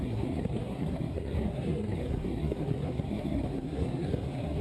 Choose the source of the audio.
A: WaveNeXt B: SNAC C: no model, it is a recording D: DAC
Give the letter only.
B